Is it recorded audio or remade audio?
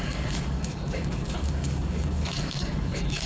remade